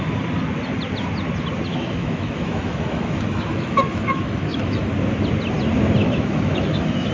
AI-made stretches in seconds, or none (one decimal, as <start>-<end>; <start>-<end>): 1.7-4.9; 6.0-7.1